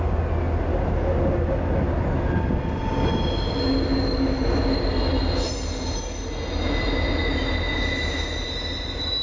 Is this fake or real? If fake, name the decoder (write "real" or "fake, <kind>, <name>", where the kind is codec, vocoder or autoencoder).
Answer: real